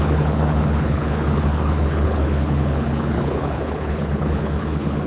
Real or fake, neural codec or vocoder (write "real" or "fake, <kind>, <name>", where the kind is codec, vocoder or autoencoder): fake, codec, HILCodec